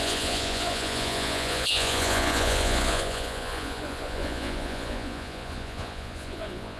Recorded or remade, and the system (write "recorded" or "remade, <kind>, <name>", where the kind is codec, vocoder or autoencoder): remade, vocoder, Vocos